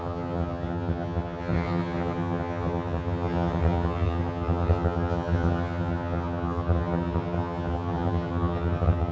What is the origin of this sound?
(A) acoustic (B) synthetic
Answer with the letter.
B